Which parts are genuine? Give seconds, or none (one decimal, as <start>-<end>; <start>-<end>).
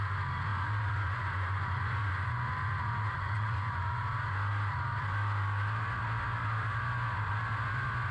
0.0-0.5; 4.0-8.1